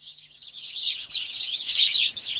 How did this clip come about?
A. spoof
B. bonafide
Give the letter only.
A